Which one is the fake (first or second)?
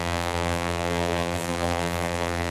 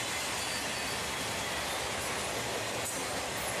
first